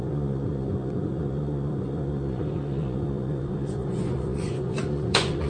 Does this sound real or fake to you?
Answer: fake